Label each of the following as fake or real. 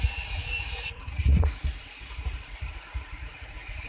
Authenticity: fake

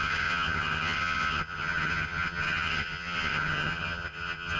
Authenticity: fake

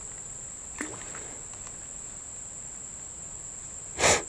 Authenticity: real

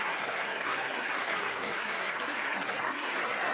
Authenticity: fake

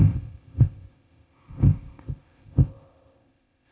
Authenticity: fake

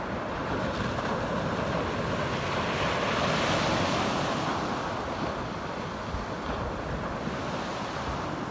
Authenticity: real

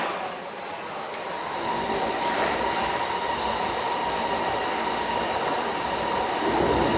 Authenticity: real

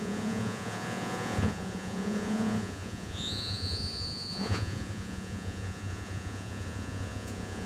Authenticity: fake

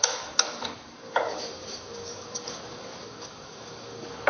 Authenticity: fake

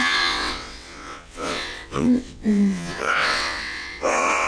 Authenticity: fake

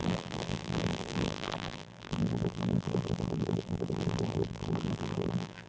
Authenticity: fake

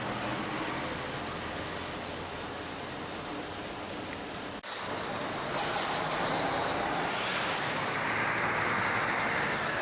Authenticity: real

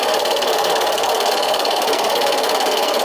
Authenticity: fake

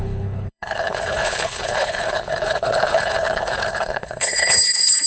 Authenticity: fake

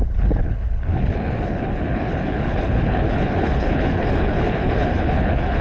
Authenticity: fake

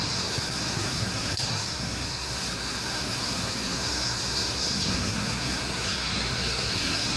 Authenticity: fake